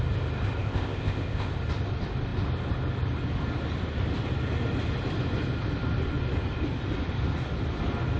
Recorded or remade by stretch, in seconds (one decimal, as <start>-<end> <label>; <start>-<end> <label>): 0.0-0.6 recorded; 0.6-1.5 remade; 1.5-8.2 recorded